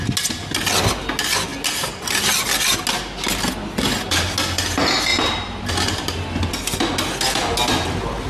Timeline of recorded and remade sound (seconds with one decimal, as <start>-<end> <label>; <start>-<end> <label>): 0.0-5.1 recorded; 5.1-5.7 remade; 5.7-8.3 recorded